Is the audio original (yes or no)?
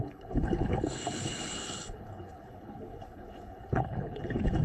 no